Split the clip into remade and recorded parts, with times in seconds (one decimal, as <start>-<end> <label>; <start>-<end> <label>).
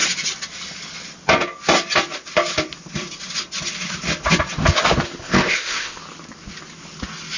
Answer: 0.0-5.2 recorded; 5.2-6.0 remade; 6.0-7.4 recorded